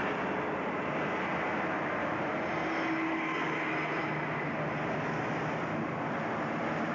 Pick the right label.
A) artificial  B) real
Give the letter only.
B